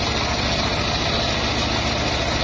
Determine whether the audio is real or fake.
real